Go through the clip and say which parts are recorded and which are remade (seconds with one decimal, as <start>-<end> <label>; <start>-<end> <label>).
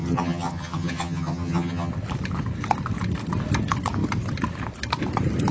0.0-1.9 remade; 1.9-5.5 recorded